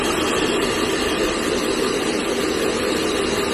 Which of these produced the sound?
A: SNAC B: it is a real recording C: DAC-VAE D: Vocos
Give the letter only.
B